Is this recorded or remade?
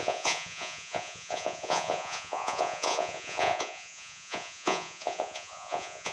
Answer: remade